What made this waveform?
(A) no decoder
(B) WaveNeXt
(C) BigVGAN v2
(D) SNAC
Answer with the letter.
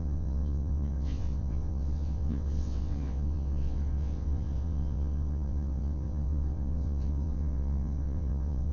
B